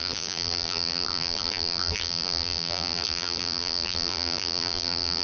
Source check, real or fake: fake